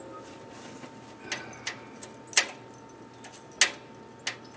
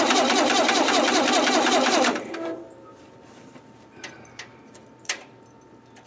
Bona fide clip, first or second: first